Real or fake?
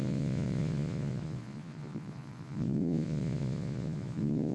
fake